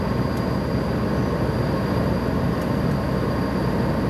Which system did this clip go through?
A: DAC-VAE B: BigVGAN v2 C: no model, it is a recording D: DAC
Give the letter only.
C